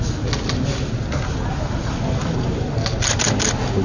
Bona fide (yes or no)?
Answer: yes